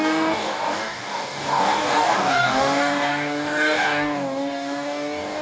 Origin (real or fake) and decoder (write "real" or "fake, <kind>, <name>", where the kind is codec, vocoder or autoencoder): fake, codec, DAC